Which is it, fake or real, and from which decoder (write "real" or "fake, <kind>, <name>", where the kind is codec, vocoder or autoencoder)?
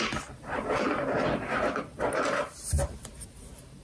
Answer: fake, vocoder, BigVGAN v2